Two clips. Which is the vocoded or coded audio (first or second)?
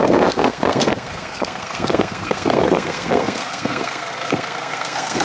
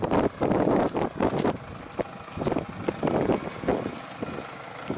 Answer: first